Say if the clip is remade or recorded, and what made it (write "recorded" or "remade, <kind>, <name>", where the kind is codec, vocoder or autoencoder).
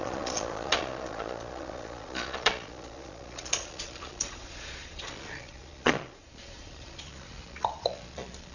remade, vocoder, Vocos